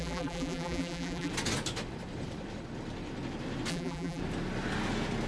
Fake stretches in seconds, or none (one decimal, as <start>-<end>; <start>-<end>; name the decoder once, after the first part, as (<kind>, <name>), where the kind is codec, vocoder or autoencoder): 0.0-1.3 (vocoder, BigVGAN v2); 3.7-4.2